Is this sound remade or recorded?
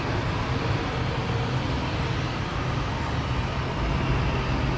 recorded